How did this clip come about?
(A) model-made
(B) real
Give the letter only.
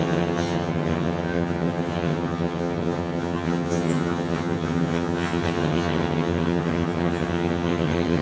A